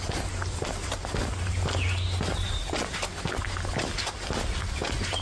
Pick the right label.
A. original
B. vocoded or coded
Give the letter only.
A